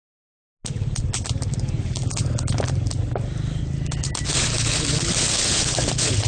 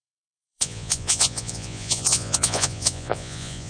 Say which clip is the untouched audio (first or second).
first